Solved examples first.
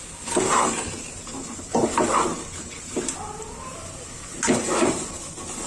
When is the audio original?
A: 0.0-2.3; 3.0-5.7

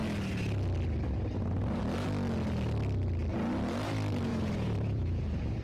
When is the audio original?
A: 0.0-4.3

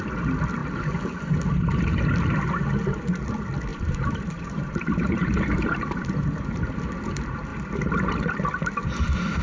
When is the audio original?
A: 0.0-3.7; 6.6-9.4

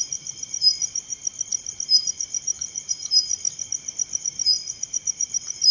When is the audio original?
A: 1.2-2.0; 3.3-4.2

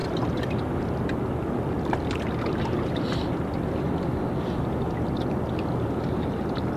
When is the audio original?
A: 0.0-6.8

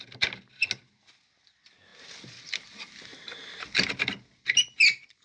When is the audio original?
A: 0.0-5.2